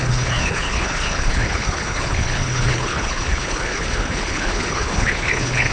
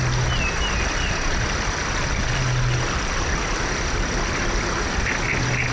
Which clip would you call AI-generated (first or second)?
first